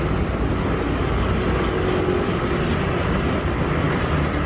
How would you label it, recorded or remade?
recorded